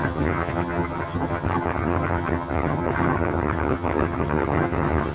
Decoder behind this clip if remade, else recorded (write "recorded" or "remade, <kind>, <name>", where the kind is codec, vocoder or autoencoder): remade, vocoder, HiFi-GAN